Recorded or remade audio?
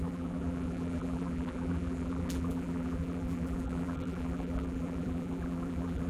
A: remade